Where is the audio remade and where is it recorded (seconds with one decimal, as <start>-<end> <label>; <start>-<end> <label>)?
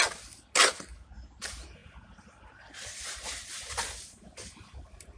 0.0-5.2 recorded